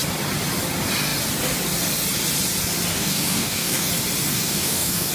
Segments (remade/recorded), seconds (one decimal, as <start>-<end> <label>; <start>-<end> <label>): 0.0-2.9 recorded; 2.9-3.9 remade; 3.9-4.3 recorded; 4.3-5.1 remade